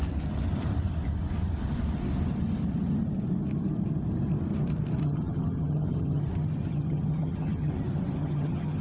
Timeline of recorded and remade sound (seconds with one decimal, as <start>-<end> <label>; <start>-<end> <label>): 0.0-5.0 recorded; 5.0-6.2 remade; 6.2-6.7 recorded; 6.7-7.7 remade; 7.7-8.2 recorded; 8.2-8.8 remade